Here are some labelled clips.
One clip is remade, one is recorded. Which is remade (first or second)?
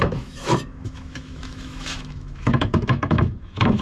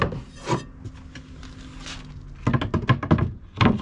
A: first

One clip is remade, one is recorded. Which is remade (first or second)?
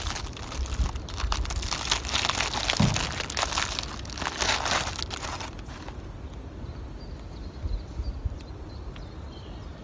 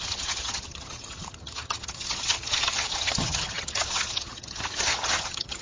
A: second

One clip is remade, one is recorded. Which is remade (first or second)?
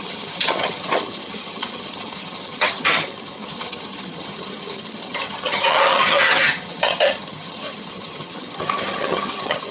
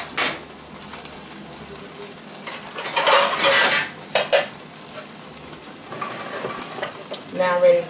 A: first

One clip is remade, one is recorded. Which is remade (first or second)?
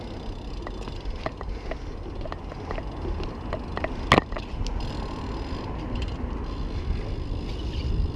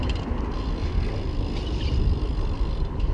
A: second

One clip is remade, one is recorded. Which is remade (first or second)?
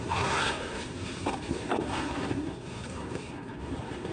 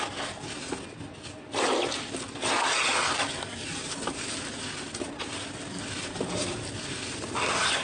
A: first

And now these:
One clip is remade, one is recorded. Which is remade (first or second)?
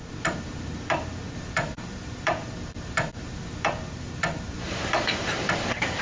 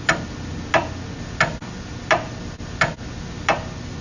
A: first